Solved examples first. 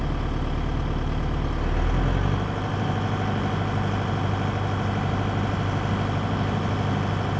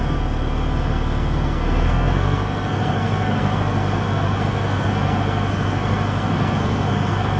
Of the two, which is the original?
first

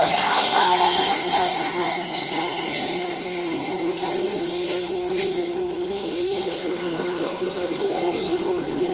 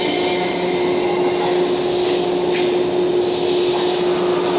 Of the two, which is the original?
second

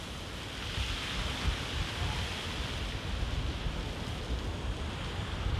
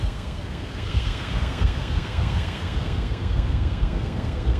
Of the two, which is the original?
first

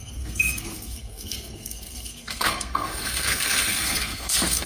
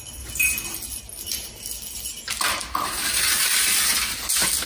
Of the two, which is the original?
second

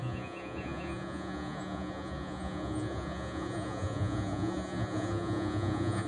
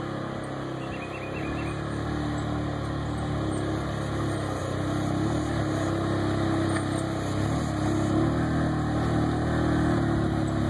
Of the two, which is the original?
second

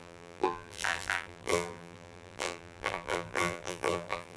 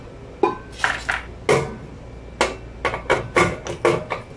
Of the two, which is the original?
second